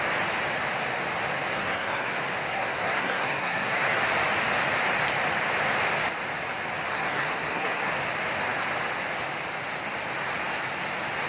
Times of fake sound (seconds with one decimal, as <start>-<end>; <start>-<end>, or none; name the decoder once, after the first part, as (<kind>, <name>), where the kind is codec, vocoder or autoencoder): 1.5-2.1 (codec, SNAC); 2.5-4.0; 6.9-7.9